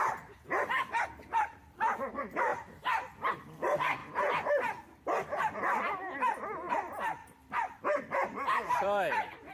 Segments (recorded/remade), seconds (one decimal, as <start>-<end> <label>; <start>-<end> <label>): 0.0-2.5 remade; 2.5-3.3 recorded; 3.3-4.0 remade; 4.0-6.7 recorded; 6.7-9.5 remade